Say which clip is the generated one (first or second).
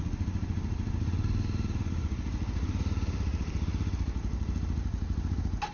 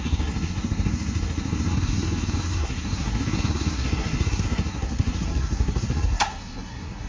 second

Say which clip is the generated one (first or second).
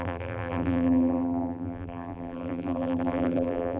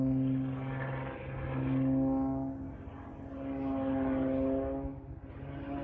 first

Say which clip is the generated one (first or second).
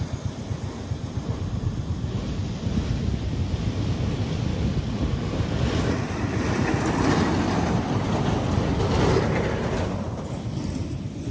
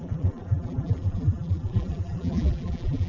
second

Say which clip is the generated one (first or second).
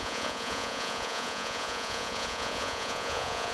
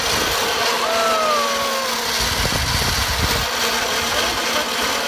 first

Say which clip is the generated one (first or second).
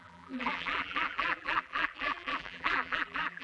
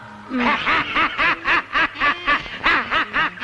first